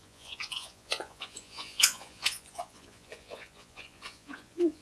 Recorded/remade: remade